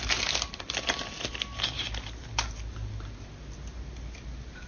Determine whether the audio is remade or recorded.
recorded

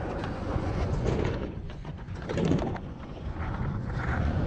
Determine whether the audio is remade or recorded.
remade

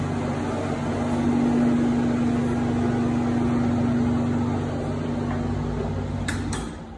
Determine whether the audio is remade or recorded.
recorded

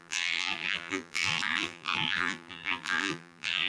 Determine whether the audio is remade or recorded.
remade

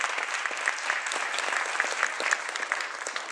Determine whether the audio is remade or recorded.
recorded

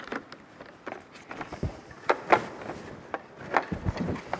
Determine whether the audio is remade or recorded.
recorded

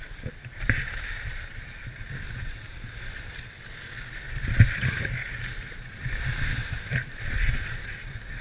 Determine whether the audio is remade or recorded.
remade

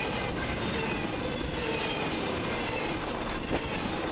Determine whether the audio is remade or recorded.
recorded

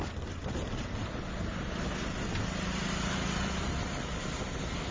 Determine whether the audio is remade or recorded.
recorded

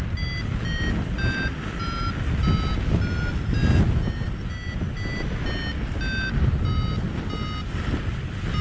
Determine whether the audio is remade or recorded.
recorded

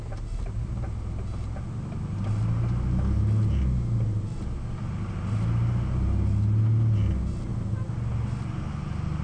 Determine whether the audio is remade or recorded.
recorded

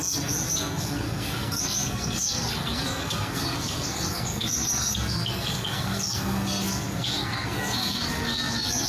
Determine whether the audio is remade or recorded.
remade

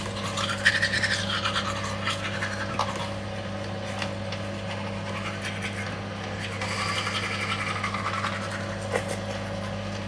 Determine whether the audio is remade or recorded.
recorded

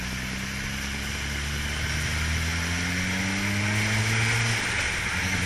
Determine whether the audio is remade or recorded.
recorded